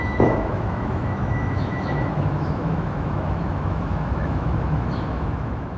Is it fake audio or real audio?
fake